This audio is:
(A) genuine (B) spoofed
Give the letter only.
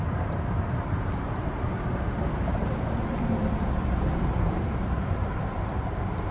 B